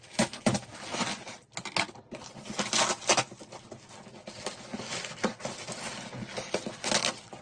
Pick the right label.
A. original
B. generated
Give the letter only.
A